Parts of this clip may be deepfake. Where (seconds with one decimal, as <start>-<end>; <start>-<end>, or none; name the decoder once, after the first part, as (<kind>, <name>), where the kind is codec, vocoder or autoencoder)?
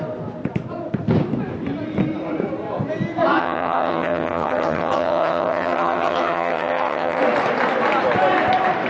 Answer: 3.4-7.2 (vocoder, HiFi-GAN)